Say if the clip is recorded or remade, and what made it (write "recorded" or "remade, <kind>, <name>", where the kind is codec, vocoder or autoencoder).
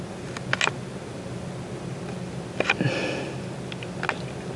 recorded